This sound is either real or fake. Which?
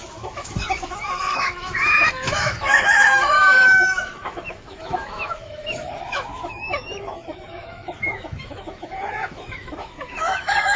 fake